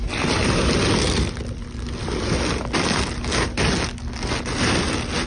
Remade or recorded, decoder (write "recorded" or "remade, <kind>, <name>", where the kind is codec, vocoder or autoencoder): recorded